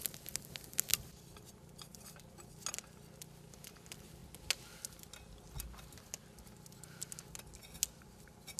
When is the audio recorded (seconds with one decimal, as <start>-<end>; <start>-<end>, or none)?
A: 0.0-8.6